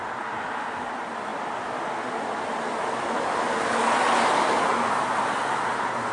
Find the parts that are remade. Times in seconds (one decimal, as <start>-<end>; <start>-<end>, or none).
none